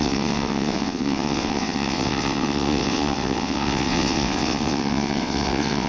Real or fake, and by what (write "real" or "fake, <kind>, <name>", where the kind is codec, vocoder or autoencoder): fake, vocoder, WaveNeXt